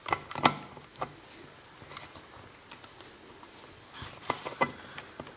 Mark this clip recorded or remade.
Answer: recorded